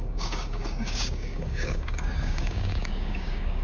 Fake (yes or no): yes